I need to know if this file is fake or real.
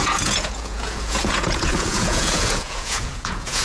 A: fake